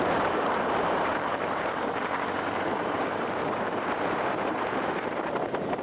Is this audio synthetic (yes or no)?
yes